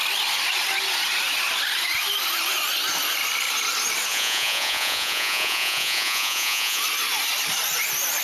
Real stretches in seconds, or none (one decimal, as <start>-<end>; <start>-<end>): 0.0-4.1; 6.8-8.2